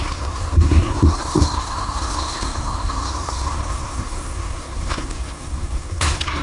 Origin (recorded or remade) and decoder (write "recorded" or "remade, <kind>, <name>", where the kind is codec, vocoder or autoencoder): remade, codec, SNAC